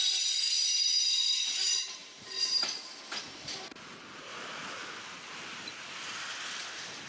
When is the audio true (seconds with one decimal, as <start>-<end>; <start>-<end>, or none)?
0.0-7.1